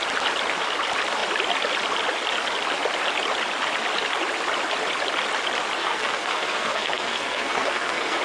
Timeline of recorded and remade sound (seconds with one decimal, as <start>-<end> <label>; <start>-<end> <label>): 0.0-5.8 recorded; 5.8-8.2 remade